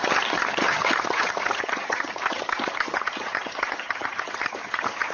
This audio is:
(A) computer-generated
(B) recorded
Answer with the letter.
A